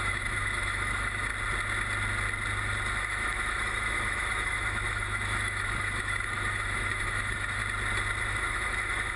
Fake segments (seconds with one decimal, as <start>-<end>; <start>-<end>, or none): 0.0-1.3; 3.0-7.6; 8.3-9.2